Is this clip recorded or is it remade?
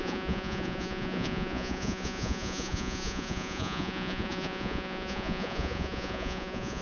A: remade